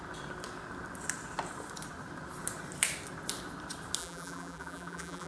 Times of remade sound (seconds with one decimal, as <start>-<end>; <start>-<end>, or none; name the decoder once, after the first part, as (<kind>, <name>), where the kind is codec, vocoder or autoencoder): 4.0-5.3 (vocoder, BigVGAN v2)